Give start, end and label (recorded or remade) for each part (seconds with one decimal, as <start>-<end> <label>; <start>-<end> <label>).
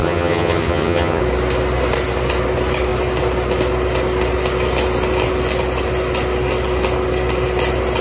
0.0-1.2 remade; 1.2-8.0 recorded